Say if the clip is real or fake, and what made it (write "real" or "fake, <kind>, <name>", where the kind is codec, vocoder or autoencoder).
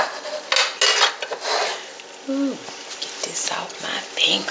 real